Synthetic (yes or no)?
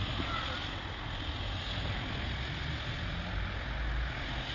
no